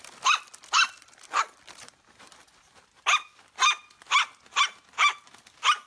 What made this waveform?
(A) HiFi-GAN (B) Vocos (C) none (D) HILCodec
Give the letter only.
C